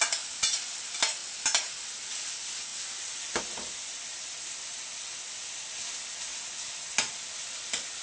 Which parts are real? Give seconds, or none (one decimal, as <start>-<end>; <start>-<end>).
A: 0.0-8.0